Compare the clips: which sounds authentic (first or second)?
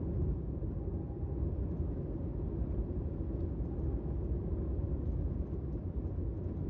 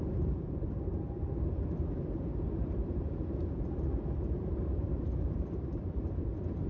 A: first